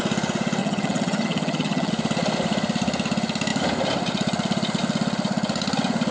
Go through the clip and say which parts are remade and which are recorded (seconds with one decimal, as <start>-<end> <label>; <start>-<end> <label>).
0.0-0.6 recorded; 0.6-1.9 remade; 1.9-6.1 recorded